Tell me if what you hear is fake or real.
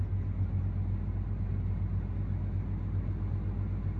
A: real